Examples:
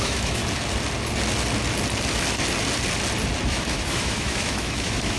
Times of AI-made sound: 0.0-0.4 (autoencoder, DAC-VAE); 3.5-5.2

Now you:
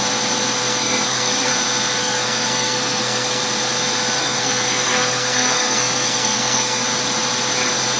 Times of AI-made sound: 0.6-1.5 (codec, SNAC); 2.0-3.4; 4.2-6.8

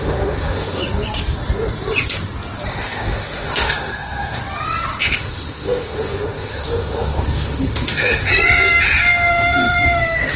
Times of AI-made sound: 0.0-0.8 (autoencoder, DAC-VAE); 2.7-4.4; 5.0-8.2; 9.3-10.4

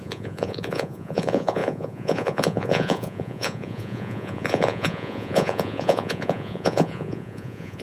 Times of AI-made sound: 0.0-7.8 (vocoder, Vocos)